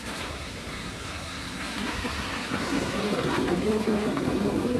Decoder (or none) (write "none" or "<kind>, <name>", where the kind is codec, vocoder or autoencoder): codec, SNAC